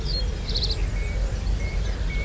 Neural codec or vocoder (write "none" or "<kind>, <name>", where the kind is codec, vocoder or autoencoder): none